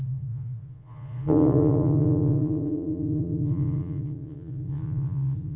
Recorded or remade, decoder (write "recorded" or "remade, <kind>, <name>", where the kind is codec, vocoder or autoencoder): remade, vocoder, Vocos